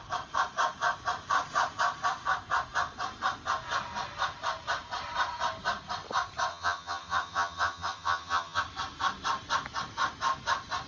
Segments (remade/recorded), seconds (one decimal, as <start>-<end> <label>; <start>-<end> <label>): 0.0-6.5 recorded; 6.5-8.6 remade; 8.6-10.9 recorded